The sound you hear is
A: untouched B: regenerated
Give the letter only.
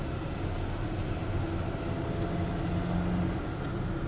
A